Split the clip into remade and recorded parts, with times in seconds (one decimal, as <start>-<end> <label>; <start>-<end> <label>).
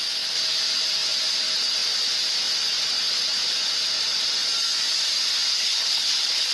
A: 0.0-5.5 recorded; 5.5-6.5 remade